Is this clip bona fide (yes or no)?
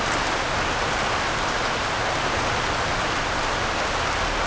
yes